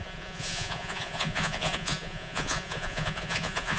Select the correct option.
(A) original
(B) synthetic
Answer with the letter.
B